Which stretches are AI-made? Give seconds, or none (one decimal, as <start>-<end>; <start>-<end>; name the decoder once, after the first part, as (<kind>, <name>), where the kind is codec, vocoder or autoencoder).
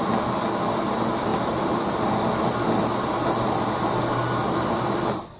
none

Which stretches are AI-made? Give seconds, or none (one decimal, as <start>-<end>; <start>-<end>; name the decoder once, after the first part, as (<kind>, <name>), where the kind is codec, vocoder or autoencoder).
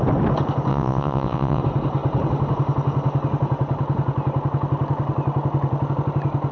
0.7-1.6 (vocoder, WaveNeXt)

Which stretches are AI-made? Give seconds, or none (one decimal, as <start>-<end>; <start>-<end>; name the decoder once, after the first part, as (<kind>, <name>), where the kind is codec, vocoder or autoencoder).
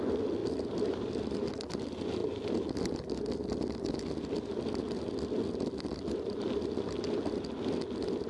0.4-1.5 (vocoder, BigVGAN v2)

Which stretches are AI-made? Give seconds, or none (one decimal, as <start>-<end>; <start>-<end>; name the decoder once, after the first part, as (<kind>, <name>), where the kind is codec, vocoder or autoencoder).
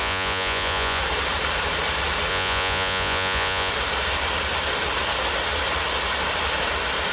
0.0-1.0 (vocoder, Vocos); 2.3-3.7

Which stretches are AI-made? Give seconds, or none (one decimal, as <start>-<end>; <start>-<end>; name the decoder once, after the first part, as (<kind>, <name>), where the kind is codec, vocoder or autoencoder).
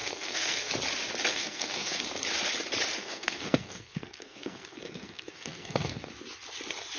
0.0-0.7 (codec, SNAC); 1.3-2.0; 3.0-6.1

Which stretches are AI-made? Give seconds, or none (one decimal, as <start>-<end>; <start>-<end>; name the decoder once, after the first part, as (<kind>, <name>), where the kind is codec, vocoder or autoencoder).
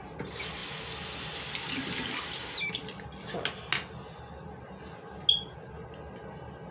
none